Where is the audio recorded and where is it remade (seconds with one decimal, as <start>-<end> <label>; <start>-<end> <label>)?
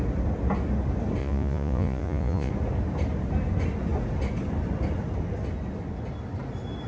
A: 0.0-1.2 recorded; 1.2-2.5 remade; 2.5-6.9 recorded